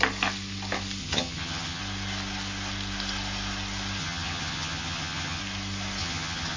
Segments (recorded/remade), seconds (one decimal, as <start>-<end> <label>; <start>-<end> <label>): 0.0-1.0 recorded; 1.0-1.8 remade; 1.8-4.0 recorded; 4.0-5.4 remade; 5.4-6.0 recorded; 6.0-6.6 remade